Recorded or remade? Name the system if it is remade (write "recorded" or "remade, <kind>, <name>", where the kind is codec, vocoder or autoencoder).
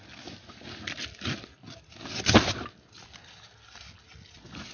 recorded